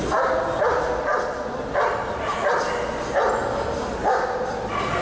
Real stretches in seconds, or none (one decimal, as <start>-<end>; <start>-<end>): 0.0-5.0